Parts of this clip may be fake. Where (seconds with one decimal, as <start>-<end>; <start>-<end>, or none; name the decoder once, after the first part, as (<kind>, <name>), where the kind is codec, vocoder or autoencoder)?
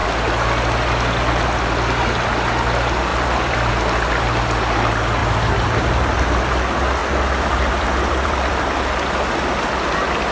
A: 3.1-3.7 (vocoder, BigVGAN v2); 5.2-6.5; 7.0-8.6